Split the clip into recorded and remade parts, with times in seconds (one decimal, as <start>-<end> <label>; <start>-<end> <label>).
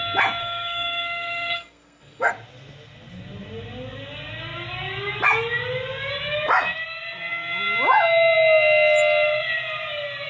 0.0-0.4 recorded; 0.4-2.3 remade; 2.3-10.3 recorded